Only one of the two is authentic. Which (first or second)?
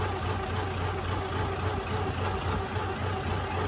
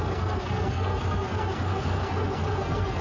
first